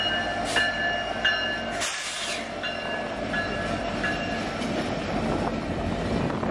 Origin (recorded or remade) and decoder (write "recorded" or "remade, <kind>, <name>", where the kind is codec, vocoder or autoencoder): recorded